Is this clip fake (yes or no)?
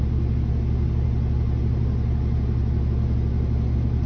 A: no